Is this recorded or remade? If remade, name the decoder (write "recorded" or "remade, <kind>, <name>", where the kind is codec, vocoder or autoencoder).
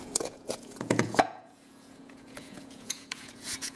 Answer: remade, vocoder, Vocos